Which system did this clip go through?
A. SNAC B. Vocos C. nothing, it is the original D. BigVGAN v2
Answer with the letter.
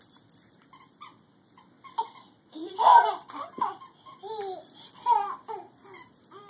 D